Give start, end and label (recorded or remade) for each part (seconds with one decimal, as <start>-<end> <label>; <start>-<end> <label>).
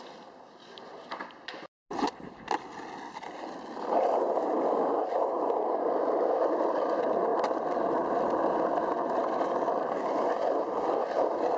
0.0-11.6 recorded